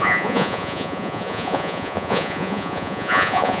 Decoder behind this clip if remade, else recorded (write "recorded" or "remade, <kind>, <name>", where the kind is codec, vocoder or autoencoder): remade, vocoder, Vocos